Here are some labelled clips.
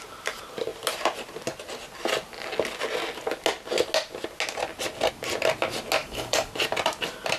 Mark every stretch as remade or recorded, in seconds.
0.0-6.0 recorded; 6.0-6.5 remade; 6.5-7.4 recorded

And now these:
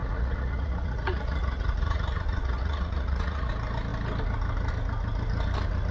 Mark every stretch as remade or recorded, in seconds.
0.0-3.5 remade; 3.5-5.9 recorded